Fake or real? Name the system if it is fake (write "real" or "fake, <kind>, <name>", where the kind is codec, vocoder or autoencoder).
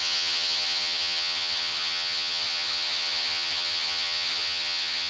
fake, vocoder, HiFi-GAN